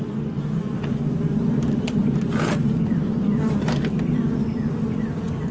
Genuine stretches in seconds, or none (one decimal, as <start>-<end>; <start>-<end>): 0.0-5.5